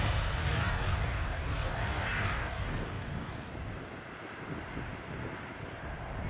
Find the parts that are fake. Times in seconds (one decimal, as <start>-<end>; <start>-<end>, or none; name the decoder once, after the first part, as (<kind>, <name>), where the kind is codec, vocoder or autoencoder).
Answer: 0.4-3.5 (codec, DAC)